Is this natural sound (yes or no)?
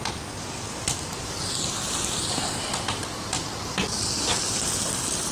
yes